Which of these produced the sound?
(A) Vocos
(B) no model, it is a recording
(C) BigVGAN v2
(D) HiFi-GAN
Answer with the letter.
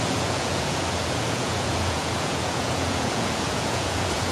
A